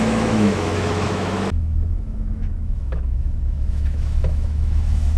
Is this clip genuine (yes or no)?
no